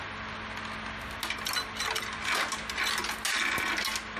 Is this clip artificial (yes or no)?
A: no